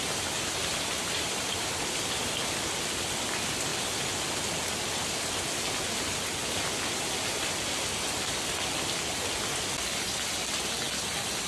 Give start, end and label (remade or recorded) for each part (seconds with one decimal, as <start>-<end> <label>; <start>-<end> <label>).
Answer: 0.0-0.6 recorded; 0.6-1.7 remade; 1.7-11.5 recorded